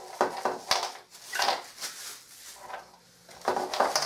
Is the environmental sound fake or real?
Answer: real